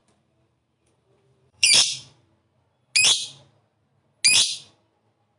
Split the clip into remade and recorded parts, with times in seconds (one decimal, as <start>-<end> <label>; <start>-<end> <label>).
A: 0.0-2.3 remade; 2.3-5.4 recorded